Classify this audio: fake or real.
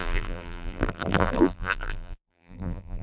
fake